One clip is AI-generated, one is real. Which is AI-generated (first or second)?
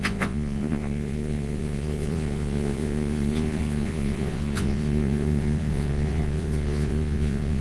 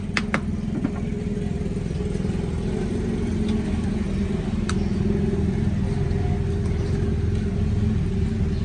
first